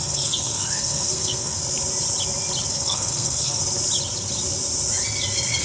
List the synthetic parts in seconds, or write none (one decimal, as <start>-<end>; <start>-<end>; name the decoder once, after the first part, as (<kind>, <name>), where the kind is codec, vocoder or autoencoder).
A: 0.0-1.6 (codec, SNAC); 2.7-3.6